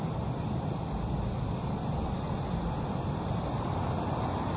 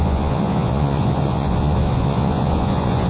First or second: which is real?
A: first